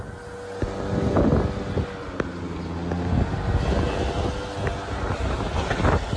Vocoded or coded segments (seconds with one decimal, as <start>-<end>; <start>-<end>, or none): none